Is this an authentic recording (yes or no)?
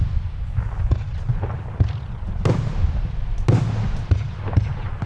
yes